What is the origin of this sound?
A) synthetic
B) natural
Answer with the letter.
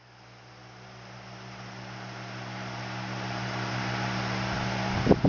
B